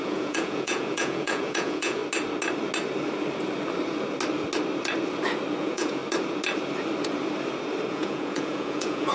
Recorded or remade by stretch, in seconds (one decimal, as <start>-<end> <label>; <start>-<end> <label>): 0.0-2.0 remade; 2.0-5.6 recorded; 5.6-6.0 remade; 6.0-7.9 recorded; 7.9-9.1 remade

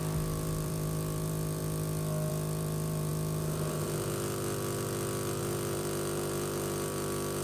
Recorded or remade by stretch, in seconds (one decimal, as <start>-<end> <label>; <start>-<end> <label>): 0.0-1.6 remade; 1.6-2.3 recorded; 2.3-3.1 remade; 3.1-5.4 recorded; 5.4-7.4 remade

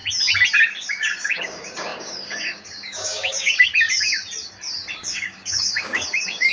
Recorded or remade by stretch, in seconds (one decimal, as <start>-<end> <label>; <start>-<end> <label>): 0.0-0.8 recorded; 0.8-3.7 remade; 3.7-4.9 recorded; 4.9-6.5 remade

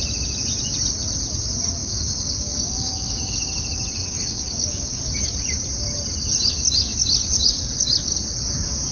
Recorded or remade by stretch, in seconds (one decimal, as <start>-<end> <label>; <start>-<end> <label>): 0.0-1.8 recorded; 1.8-3.3 remade; 3.3-4.0 recorded; 4.0-5.0 remade; 5.0-8.9 recorded

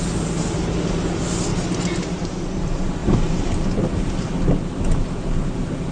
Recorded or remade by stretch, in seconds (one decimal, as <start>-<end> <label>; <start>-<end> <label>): 0.0-5.9 recorded